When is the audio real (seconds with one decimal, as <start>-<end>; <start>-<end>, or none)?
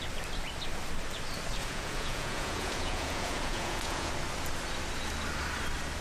0.0-1.6; 4.1-6.0